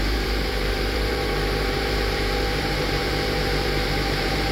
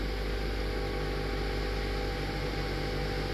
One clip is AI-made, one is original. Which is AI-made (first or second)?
first